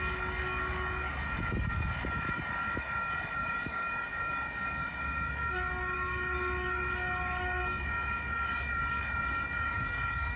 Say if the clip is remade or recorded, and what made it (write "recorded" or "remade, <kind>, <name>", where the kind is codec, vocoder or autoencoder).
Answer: remade, codec, DAC